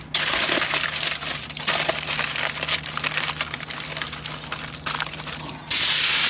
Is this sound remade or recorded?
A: recorded